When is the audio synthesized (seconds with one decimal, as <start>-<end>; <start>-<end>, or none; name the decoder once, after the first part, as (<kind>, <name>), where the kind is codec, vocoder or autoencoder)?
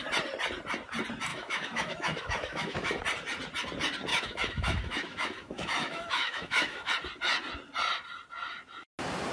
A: 1.3-3.0 (autoencoder, DAC-VAE); 4.1-6.9